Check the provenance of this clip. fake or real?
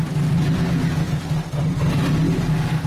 real